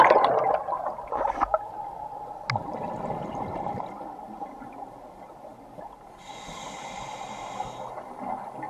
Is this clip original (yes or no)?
yes